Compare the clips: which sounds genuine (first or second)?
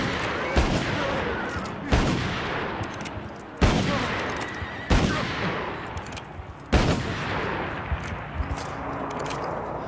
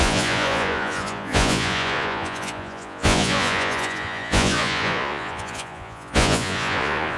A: first